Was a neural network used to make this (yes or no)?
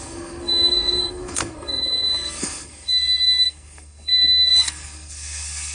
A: yes